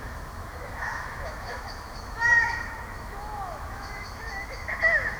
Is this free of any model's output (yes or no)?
no